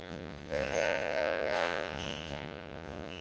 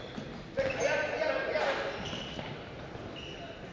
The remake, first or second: first